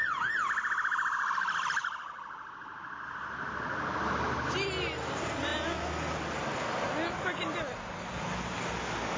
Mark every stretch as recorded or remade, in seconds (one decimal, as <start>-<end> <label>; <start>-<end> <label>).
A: 0.0-9.2 recorded